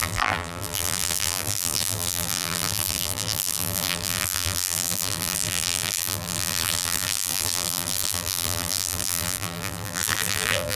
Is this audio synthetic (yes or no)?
yes